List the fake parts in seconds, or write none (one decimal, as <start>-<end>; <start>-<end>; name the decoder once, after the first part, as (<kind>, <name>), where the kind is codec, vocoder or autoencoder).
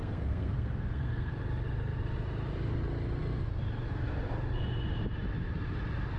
0.0-1.3 (codec, SNAC)